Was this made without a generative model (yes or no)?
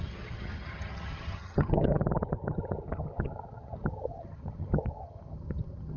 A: no